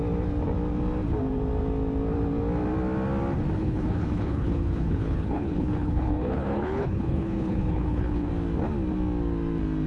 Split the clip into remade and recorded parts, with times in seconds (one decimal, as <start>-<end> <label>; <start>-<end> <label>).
0.0-3.6 recorded; 3.6-8.3 remade; 8.3-9.9 recorded

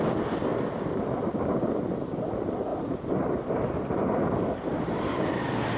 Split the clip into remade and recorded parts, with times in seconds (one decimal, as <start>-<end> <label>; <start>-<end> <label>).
0.0-2.7 recorded; 2.7-5.0 remade; 5.0-5.8 recorded

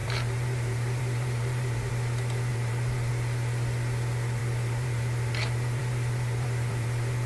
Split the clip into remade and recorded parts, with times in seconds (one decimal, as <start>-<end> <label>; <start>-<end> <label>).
0.0-1.9 remade; 1.9-2.5 recorded; 2.5-3.1 remade; 3.1-4.4 recorded; 4.4-7.3 remade

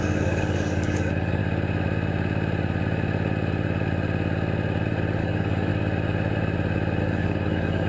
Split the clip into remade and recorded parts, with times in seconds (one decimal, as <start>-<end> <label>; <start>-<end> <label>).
0.0-1.4 remade; 1.4-5.2 recorded; 5.2-5.7 remade; 5.7-7.0 recorded; 7.0-7.9 remade

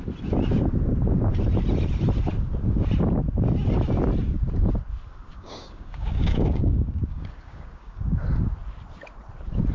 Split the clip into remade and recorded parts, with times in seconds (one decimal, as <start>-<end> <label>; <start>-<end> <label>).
0.0-5.3 recorded; 5.3-8.2 remade; 8.2-9.7 recorded

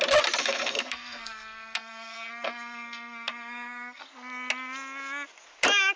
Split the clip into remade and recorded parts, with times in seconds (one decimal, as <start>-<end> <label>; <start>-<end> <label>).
0.0-0.4 recorded; 0.4-4.0 remade; 4.0-6.0 recorded

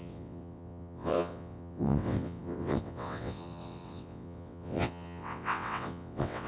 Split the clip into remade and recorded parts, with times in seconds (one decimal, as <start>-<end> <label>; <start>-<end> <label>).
0.0-6.5 remade

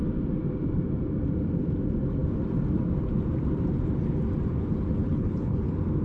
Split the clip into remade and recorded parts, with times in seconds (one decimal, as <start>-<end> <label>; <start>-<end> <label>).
0.0-5.0 recorded; 5.0-5.6 remade; 5.6-6.0 recorded